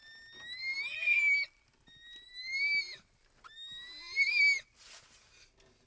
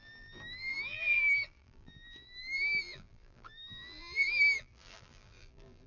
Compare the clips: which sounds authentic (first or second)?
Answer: first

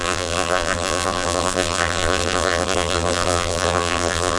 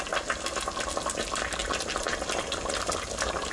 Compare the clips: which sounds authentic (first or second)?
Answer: second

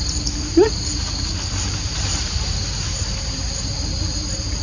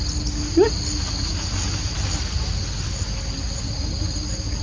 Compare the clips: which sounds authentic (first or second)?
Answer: second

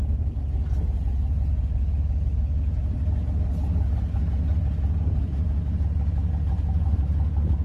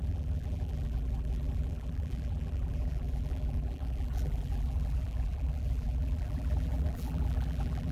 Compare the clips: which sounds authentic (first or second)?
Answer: first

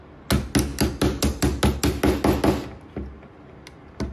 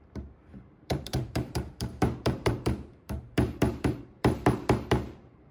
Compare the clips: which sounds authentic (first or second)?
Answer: first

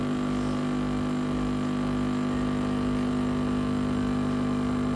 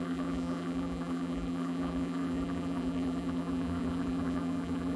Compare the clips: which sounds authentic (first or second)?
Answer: first